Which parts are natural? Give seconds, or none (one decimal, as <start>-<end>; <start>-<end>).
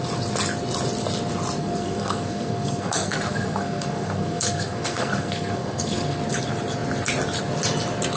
0.0-1.6; 6.2-8.2